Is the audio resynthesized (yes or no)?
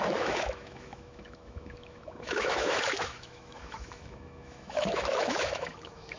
yes